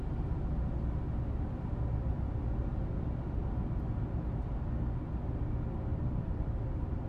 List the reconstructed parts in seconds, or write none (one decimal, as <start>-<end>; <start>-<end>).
5.9-7.1